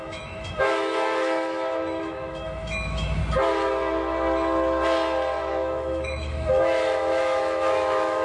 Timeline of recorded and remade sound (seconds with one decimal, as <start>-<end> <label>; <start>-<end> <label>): 0.0-3.2 remade; 3.2-5.5 recorded; 5.5-8.2 remade

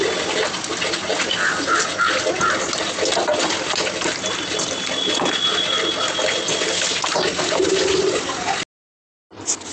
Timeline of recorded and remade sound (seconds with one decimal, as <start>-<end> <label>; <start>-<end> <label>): 0.0-9.7 recorded